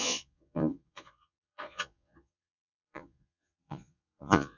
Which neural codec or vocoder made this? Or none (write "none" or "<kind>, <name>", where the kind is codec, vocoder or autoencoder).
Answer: vocoder, Vocos